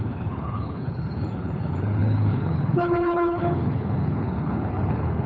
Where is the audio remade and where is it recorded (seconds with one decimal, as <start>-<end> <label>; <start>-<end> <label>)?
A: 0.0-5.3 remade